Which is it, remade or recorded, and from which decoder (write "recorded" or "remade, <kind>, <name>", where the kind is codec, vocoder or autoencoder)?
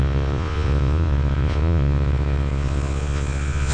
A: remade, vocoder, Vocos